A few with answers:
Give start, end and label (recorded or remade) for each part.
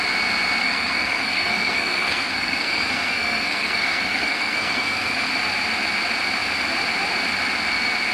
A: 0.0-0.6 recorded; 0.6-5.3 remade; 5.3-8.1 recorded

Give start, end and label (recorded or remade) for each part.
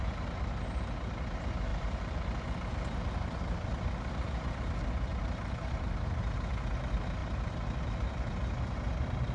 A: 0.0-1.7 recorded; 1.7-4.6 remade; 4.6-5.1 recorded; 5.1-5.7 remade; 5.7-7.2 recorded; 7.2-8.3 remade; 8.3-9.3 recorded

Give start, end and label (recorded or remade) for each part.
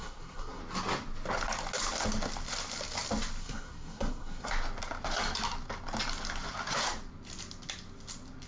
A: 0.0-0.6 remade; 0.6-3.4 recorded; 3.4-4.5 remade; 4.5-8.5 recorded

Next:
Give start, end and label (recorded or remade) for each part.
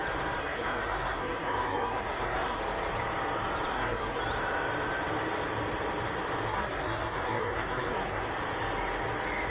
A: 0.0-0.4 recorded; 0.4-2.6 remade; 2.6-3.7 recorded; 3.7-4.2 remade; 4.2-6.5 recorded; 6.5-8.3 remade; 8.3-9.5 recorded